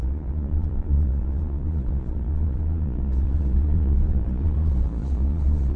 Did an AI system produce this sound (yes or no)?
yes